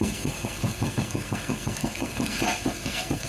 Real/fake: fake